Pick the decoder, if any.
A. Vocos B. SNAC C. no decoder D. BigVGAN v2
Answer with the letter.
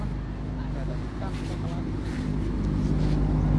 C